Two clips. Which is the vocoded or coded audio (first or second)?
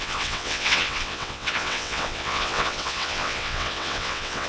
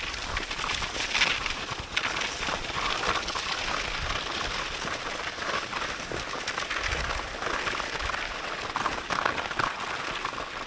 first